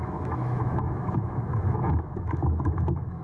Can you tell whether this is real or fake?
fake